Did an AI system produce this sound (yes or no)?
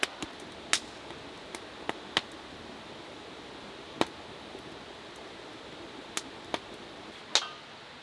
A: no